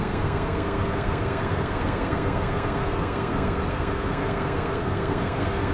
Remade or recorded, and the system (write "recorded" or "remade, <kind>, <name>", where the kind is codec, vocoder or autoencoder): remade, codec, SNAC